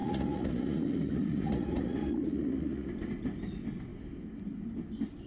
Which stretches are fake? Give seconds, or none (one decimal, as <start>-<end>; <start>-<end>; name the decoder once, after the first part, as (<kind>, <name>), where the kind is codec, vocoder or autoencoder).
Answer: 0.0-2.9 (vocoder, Vocos)

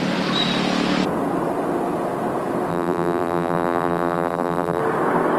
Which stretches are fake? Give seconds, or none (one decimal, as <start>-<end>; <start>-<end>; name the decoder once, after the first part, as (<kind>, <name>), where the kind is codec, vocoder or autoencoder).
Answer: 2.7-4.8 (vocoder, BigVGAN v2)

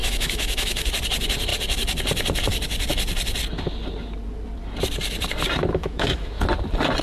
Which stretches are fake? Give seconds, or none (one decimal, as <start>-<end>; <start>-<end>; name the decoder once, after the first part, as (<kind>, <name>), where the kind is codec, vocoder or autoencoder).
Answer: 0.0-0.9 (autoencoder, DAC-VAE); 5.7-6.4

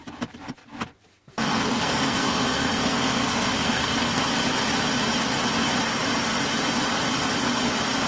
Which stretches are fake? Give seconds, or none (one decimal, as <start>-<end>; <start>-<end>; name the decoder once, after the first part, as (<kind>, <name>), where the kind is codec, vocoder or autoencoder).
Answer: 1.1-4.2 (codec, SNAC)

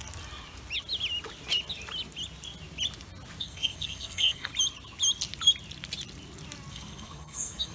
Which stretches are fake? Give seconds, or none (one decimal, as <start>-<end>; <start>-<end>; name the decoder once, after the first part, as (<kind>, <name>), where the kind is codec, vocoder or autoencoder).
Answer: 3.4-4.5 (codec, SNAC); 6.7-7.7